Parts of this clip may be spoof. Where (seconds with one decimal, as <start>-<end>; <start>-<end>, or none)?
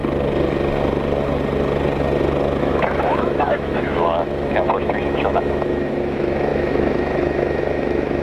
2.6-8.2